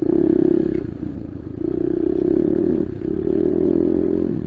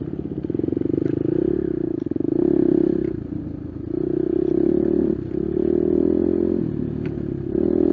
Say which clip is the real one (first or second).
second